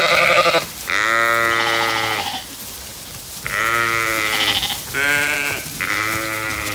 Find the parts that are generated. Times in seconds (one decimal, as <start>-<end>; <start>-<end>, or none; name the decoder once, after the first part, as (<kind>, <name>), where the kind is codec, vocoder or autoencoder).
none